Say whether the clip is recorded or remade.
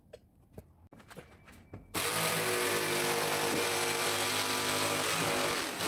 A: recorded